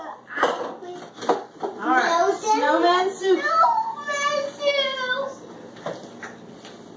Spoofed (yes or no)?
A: no